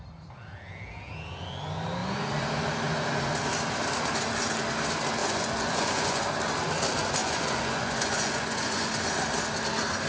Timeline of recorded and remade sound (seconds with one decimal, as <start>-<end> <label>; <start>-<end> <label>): 0.0-5.2 recorded; 5.2-6.2 remade; 6.2-7.2 recorded; 7.2-8.9 remade; 8.9-10.1 recorded